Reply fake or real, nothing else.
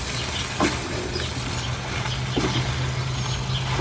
real